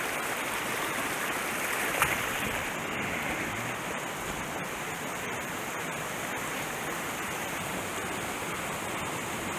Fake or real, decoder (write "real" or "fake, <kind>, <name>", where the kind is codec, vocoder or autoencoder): real